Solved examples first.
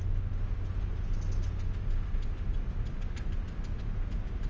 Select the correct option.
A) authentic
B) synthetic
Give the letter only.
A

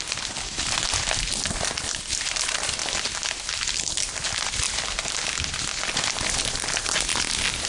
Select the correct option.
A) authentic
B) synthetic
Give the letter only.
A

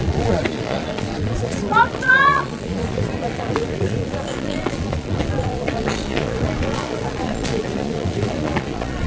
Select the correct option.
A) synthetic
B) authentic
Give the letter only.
A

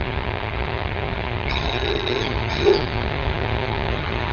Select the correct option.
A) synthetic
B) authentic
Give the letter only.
A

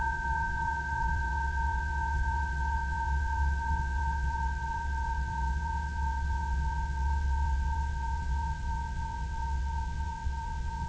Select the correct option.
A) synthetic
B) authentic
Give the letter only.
A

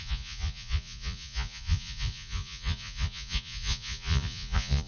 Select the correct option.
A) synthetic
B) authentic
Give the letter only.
A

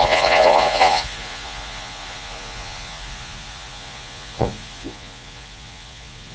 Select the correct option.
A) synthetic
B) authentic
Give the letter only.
A